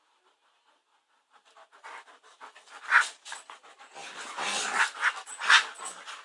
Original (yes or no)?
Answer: yes